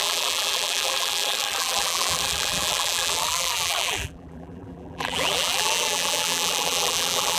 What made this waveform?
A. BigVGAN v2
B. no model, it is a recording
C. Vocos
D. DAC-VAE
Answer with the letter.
A